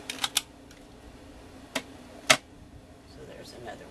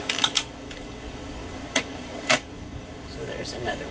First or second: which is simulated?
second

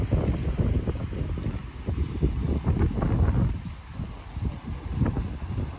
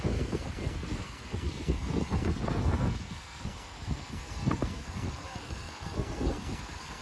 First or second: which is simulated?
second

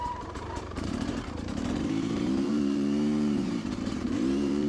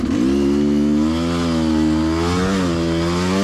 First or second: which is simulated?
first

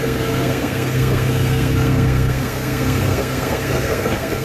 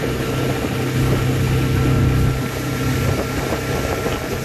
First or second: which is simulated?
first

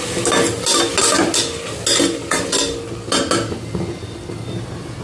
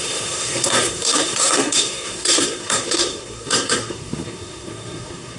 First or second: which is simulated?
second